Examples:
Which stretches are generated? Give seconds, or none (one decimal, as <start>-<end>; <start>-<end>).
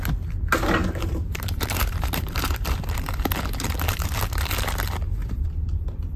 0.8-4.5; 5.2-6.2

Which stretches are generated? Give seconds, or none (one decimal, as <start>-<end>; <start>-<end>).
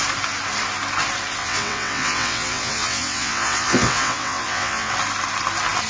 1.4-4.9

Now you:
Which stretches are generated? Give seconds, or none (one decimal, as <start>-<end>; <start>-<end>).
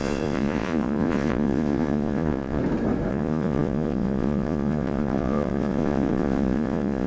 0.0-2.6; 3.1-7.1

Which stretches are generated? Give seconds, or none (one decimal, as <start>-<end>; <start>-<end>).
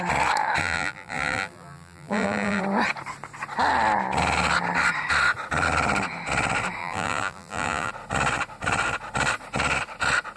0.6-2.6; 6.8-7.9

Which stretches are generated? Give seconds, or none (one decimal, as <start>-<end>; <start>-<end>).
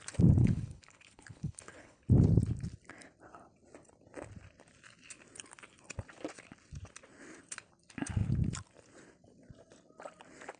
0.4-2.1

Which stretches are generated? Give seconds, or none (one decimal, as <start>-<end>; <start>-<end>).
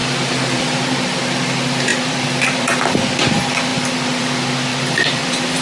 1.9-3.1; 4.7-5.6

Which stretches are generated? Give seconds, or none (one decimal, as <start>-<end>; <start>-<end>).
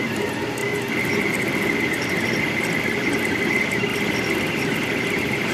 none